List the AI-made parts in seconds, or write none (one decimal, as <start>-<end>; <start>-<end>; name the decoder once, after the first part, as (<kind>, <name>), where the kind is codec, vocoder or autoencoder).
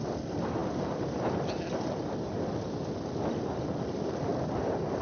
none